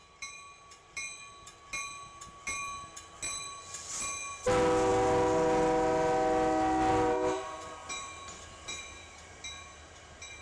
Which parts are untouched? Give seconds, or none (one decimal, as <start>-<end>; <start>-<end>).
0.0-10.4